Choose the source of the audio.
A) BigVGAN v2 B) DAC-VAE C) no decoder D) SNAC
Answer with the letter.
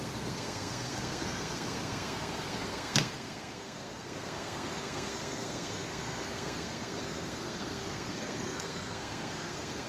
D